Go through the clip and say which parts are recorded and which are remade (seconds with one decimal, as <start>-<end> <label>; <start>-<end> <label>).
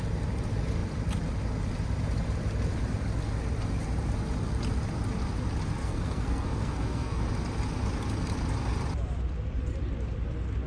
0.0-5.8 recorded; 5.8-7.2 remade; 7.2-10.7 recorded